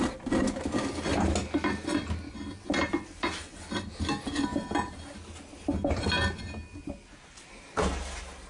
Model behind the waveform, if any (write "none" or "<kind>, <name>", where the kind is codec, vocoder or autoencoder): none